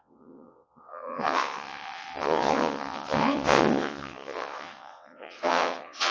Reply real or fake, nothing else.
fake